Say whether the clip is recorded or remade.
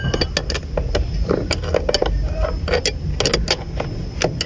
recorded